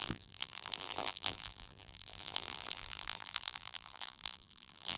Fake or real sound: fake